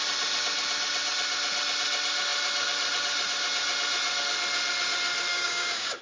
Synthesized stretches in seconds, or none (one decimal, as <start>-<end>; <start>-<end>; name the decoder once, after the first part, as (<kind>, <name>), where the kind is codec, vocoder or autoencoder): 5.3-6.0 (codec, DAC)